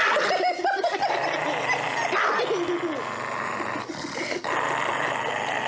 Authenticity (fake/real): real